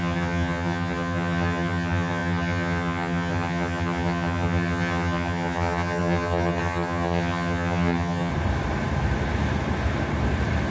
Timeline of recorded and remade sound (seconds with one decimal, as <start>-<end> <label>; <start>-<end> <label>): 0.0-8.3 remade; 8.3-10.7 recorded